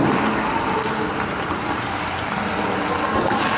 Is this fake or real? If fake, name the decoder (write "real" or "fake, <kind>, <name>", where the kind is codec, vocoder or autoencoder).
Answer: real